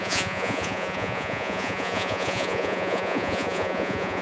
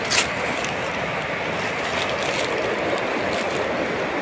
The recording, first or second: second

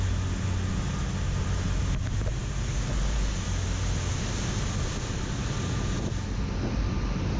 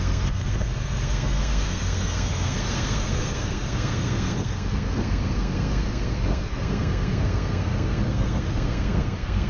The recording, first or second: first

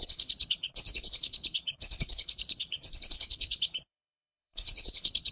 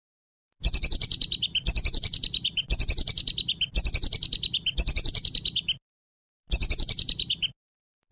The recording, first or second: second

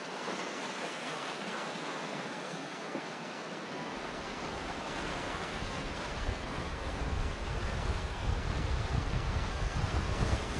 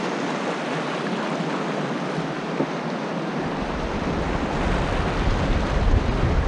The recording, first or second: second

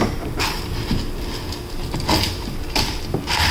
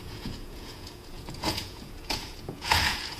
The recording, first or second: first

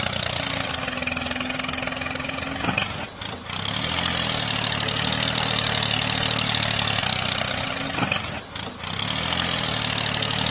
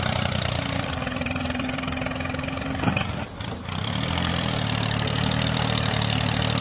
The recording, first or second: first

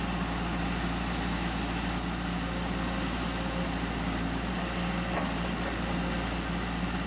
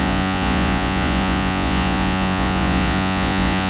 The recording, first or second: first